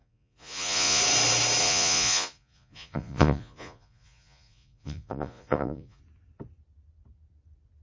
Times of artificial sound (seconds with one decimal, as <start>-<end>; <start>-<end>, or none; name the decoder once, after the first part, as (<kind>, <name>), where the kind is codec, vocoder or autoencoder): 0.0-1.0 (vocoder, Vocos); 1.6-6.0